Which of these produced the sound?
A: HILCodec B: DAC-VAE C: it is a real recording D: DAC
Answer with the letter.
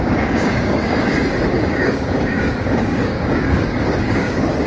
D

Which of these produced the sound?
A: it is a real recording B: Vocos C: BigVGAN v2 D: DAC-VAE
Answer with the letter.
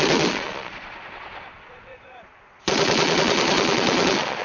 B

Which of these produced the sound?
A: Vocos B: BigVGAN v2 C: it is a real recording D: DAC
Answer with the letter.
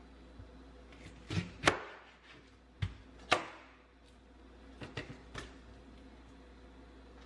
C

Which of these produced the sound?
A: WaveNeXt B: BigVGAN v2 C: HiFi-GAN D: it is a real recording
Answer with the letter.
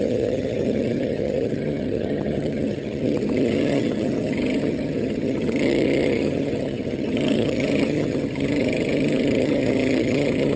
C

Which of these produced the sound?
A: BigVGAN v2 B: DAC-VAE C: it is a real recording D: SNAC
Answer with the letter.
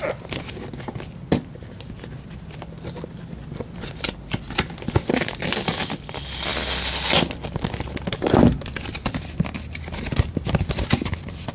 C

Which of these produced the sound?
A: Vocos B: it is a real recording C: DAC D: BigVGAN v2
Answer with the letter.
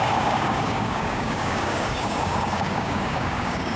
C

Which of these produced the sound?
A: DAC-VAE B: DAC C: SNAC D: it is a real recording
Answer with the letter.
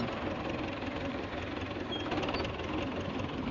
D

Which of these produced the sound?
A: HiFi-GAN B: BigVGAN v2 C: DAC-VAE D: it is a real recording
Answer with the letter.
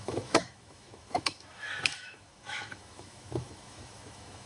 C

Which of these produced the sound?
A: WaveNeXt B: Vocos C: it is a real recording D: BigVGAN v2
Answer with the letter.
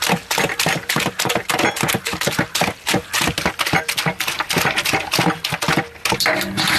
C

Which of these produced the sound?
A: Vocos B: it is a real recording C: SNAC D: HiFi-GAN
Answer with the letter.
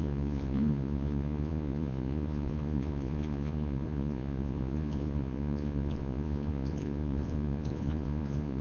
A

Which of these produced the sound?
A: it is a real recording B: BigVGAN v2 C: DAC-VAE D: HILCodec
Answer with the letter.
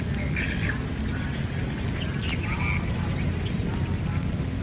A